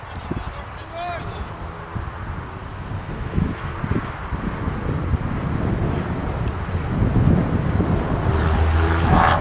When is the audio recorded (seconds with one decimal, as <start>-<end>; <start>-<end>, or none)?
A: 0.0-2.6; 3.7-9.4